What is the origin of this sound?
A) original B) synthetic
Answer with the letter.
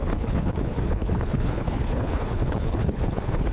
B